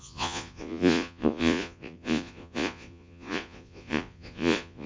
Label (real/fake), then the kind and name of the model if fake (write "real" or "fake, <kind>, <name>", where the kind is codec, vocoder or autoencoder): fake, vocoder, Vocos